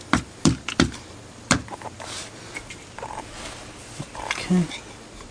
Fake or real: real